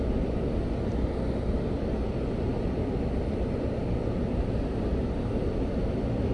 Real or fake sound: real